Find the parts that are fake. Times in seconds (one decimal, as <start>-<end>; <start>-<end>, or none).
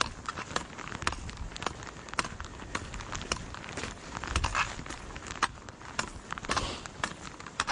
0.0-0.6; 3.0-4.5; 6.5-7.7